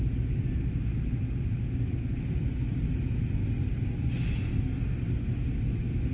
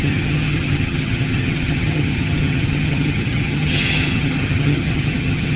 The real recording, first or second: first